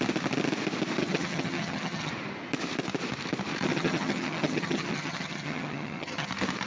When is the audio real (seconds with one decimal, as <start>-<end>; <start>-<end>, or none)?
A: 0.0-1.0; 2.1-3.7; 6.3-6.7